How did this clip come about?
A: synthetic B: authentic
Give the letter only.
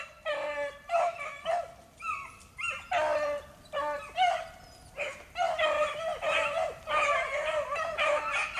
B